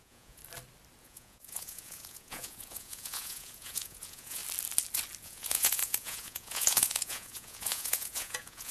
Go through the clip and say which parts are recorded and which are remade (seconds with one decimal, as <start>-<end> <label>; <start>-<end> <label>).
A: 0.0-0.4 remade; 0.4-1.0 recorded; 1.0-4.4 remade; 4.4-5.2 recorded; 5.2-8.7 remade